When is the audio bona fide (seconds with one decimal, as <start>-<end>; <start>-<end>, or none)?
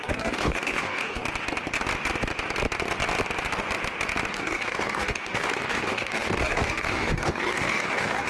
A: 1.2-4.3